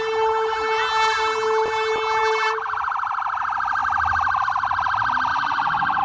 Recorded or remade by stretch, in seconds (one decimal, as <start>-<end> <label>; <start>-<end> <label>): 0.0-5.3 recorded; 5.3-6.0 remade